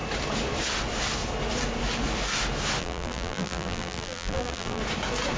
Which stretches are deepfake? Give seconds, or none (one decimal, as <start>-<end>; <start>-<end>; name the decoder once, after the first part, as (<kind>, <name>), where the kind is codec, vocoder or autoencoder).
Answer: 2.8-4.8 (vocoder, BigVGAN v2)